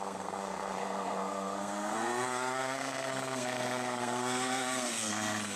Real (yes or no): no